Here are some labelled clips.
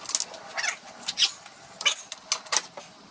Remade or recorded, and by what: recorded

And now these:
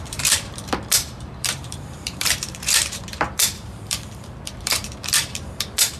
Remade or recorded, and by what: remade, vocoder, BigVGAN v2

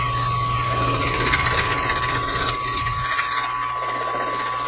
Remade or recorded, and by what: recorded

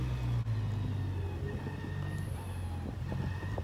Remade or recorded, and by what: recorded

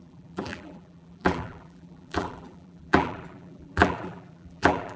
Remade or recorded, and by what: remade, vocoder, BigVGAN v2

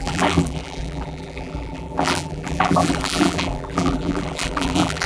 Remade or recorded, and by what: remade, vocoder, BigVGAN v2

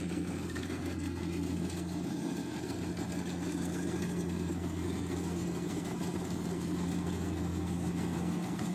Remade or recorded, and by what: remade, codec, SNAC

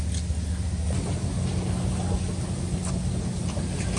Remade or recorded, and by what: recorded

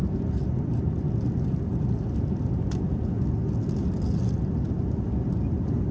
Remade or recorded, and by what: recorded